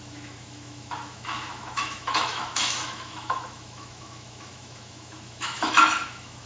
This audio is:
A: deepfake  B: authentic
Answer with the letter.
A